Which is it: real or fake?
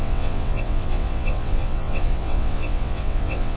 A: fake